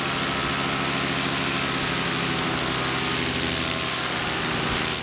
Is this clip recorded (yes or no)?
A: yes